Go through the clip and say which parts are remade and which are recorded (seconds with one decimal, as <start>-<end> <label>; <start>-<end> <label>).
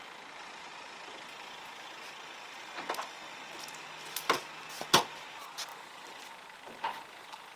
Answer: 0.0-7.6 recorded